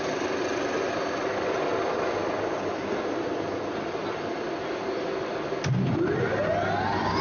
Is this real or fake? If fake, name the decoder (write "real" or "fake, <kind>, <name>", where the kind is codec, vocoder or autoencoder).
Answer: real